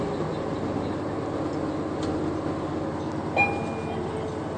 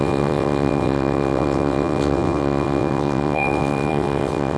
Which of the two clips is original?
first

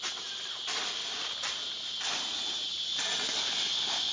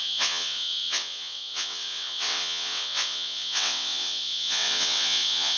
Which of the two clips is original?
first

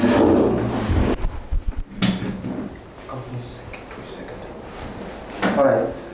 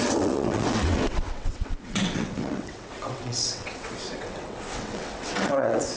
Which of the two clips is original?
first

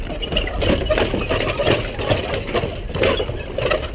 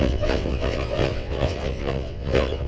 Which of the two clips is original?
first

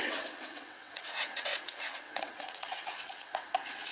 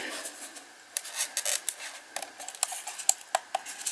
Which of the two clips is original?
second